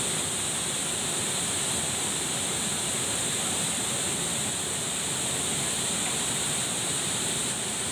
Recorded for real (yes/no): yes